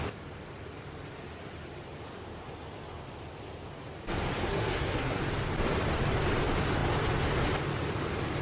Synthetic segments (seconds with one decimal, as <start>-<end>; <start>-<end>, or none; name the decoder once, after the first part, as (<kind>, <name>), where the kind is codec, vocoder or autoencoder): 4.4-5.2 (codec, SNAC)